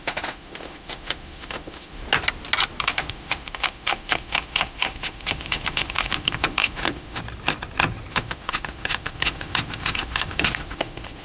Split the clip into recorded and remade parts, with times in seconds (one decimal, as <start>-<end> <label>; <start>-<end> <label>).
0.0-2.0 remade; 2.0-2.8 recorded; 2.8-7.2 remade; 7.2-8.1 recorded; 8.1-11.2 remade